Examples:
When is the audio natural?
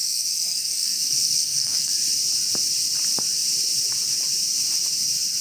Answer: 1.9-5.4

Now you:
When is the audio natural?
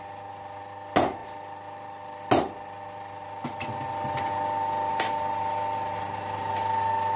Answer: 0.0-7.2